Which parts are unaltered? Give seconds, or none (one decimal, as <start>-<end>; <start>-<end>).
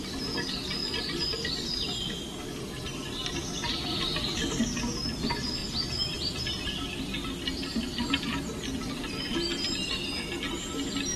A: 0.0-3.9; 4.6-11.2